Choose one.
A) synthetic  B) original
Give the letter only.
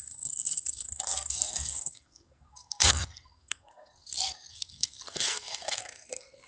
A